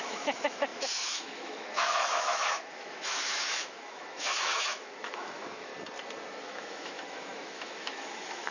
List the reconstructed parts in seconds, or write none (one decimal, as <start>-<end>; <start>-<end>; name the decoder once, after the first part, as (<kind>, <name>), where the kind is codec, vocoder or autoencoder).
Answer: 0.0-5.7 (autoencoder, DAC-VAE); 6.4-8.5